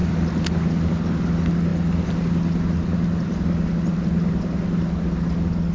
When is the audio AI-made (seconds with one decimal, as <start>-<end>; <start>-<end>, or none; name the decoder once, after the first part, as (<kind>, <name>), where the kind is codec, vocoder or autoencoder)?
none